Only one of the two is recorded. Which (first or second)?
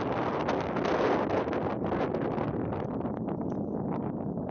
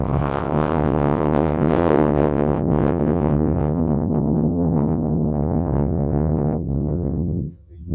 first